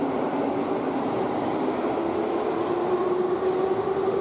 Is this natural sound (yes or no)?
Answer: yes